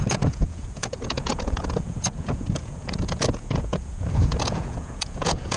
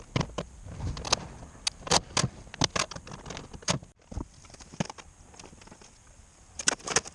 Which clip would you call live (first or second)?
second